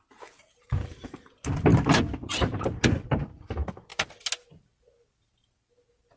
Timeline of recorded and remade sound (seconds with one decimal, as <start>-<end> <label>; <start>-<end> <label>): 0.0-6.2 recorded